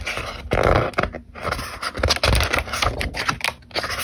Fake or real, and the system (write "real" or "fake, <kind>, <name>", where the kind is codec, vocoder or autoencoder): real